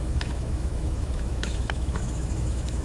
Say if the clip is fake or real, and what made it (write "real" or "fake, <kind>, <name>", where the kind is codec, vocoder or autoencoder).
fake, autoencoder, DAC-VAE